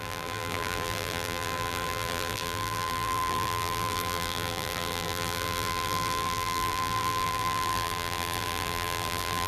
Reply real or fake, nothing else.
fake